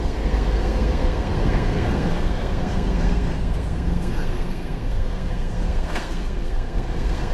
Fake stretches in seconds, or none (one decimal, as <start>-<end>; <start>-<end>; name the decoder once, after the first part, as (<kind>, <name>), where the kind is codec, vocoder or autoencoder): 0.0-7.3 (codec, SNAC)